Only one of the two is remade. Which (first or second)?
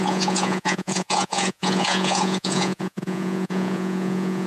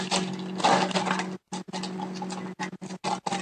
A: first